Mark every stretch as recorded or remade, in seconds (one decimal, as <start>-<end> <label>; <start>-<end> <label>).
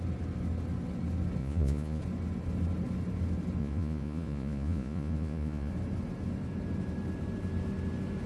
0.0-1.4 recorded; 1.4-2.0 remade; 2.0-3.6 recorded; 3.6-5.7 remade; 5.7-8.3 recorded